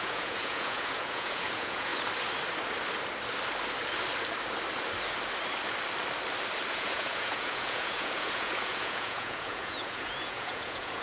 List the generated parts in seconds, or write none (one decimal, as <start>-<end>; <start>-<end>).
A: 0.0-1.9; 6.7-11.0